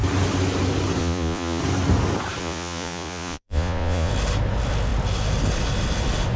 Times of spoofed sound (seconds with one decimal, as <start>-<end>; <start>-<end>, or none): 1.0-1.6; 2.4-4.1